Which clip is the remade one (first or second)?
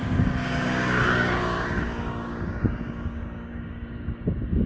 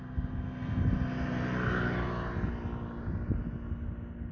first